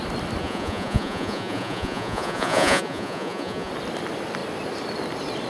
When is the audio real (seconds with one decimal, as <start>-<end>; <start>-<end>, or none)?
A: 0.0-0.4; 3.7-5.5